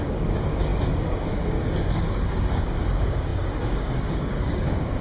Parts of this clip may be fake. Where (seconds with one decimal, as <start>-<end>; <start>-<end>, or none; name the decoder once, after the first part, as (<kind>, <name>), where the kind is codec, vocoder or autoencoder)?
0.0-5.0 (codec, DAC)